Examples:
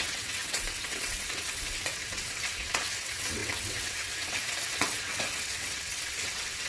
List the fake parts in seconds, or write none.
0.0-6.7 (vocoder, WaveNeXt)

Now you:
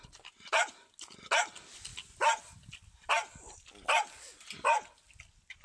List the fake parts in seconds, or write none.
none